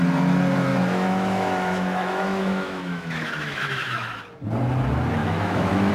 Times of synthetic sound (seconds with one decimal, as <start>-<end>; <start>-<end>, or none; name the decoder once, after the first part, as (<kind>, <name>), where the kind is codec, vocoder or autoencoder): 0.7-4.2 (autoencoder, DAC-VAE); 5.2-5.9